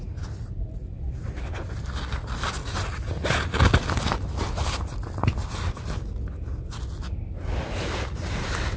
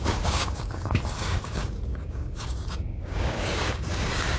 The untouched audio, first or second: first